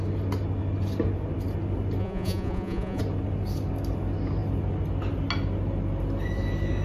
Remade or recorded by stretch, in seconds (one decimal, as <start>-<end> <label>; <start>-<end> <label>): 0.0-2.0 recorded; 2.0-3.0 remade; 3.0-6.8 recorded